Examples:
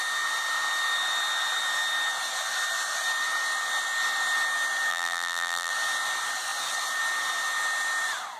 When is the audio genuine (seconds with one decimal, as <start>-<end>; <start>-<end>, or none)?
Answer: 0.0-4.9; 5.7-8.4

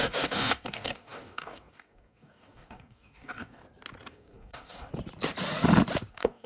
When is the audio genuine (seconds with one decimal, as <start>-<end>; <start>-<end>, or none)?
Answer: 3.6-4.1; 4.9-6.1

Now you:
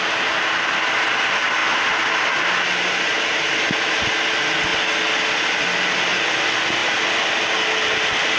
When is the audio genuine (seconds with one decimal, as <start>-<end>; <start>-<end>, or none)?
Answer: 0.0-8.4

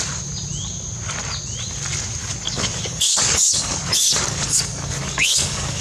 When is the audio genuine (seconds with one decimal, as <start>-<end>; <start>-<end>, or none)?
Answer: 0.0-2.2

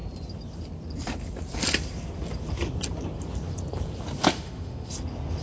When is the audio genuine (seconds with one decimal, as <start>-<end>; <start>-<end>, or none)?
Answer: 0.0-4.3; 4.9-5.4

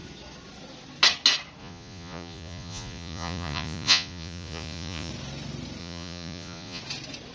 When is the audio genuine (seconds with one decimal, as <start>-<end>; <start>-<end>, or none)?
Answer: 0.0-1.6; 5.1-5.8; 6.8-7.3